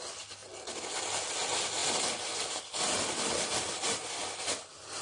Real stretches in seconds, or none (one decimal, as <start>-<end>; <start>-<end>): 0.0-5.0